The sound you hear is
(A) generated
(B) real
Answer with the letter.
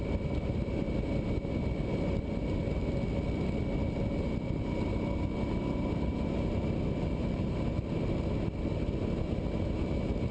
B